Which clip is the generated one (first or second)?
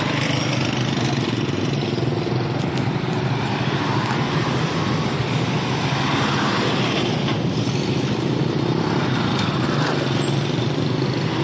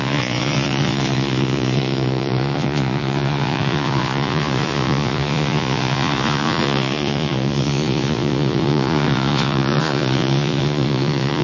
second